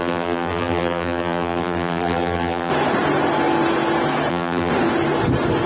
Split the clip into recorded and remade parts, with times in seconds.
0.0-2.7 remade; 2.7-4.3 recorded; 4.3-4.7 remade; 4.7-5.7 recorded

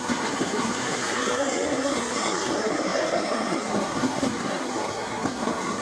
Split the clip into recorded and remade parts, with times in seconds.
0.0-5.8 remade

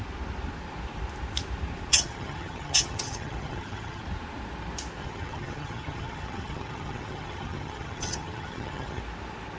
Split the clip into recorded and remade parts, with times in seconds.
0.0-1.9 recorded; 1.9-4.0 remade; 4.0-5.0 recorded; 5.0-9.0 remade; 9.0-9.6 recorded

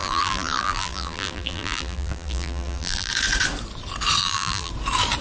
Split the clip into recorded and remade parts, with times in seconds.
0.0-3.1 remade; 3.1-4.2 recorded; 4.2-4.7 remade; 4.7-5.2 recorded

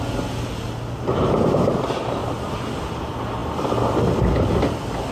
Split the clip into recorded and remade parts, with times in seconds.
0.0-5.1 recorded